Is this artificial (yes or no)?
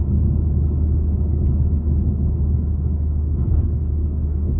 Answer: yes